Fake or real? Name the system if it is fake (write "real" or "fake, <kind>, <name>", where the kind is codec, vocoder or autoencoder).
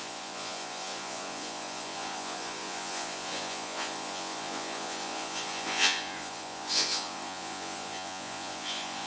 fake, vocoder, Vocos